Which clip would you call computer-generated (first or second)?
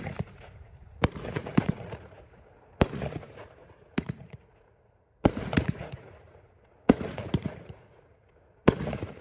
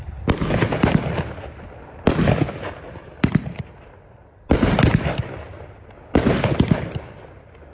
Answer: first